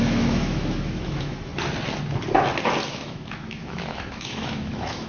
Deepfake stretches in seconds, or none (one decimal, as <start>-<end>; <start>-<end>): 0.0-1.5; 2.9-5.1

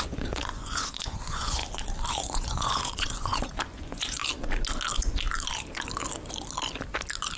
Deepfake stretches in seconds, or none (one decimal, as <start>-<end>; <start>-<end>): 0.0-1.6; 2.1-4.2